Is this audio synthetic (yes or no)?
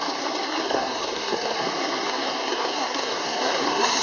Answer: yes